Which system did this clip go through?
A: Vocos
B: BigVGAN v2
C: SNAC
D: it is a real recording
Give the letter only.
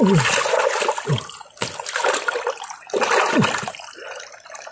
D